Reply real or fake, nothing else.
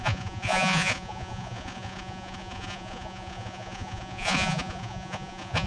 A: fake